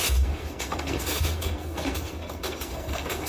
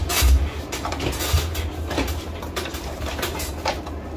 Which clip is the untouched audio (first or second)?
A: second